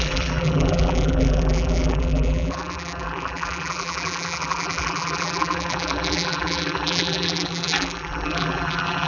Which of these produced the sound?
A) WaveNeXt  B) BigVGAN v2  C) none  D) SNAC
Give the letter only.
B